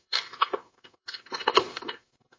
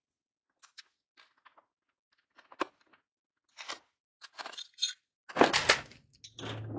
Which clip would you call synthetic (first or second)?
first